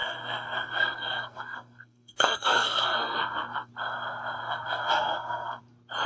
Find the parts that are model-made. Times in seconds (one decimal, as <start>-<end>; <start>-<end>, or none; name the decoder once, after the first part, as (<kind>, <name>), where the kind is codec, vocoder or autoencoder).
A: 0.0-3.7 (codec, SNAC); 4.4-5.6